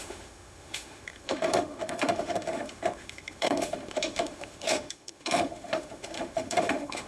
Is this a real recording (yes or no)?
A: no